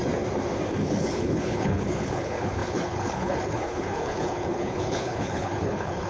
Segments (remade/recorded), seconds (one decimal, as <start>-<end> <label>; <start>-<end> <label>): 0.0-0.7 recorded; 0.7-6.1 remade